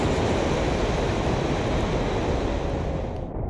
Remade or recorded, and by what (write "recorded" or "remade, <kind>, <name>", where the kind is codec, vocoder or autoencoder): recorded